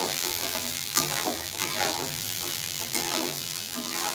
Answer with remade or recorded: remade